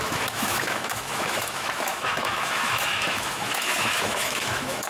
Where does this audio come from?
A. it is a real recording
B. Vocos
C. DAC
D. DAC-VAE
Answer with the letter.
D